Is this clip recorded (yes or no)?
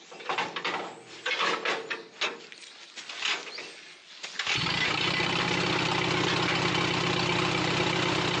yes